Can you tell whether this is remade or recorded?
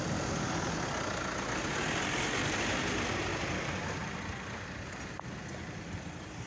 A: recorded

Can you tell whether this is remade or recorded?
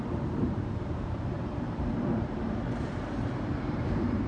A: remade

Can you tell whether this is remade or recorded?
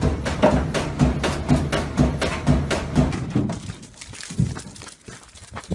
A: remade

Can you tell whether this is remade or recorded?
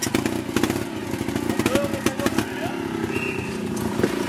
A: recorded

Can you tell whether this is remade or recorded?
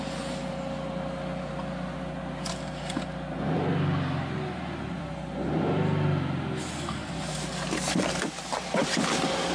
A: recorded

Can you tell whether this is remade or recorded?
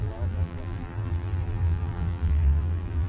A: remade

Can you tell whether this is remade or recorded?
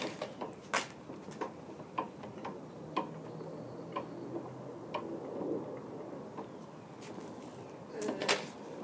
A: recorded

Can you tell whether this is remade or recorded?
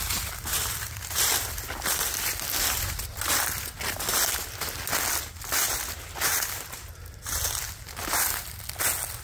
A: recorded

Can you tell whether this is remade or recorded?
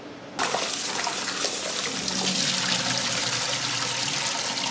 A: recorded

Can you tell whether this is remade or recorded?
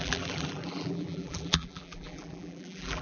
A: remade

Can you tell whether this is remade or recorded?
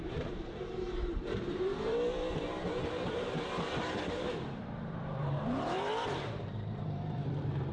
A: remade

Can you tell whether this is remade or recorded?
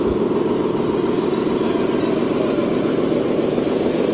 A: remade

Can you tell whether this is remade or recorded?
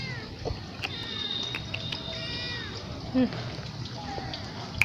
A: recorded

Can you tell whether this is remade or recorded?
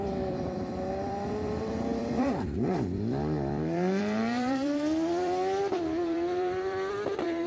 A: remade